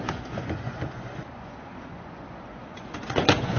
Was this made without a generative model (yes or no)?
no